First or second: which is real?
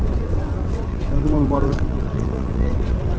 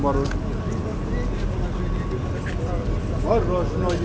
second